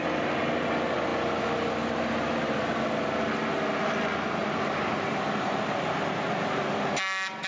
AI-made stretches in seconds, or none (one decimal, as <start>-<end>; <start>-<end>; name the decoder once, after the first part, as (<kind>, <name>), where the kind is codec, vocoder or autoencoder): 4.4-6.6 (vocoder, BigVGAN v2)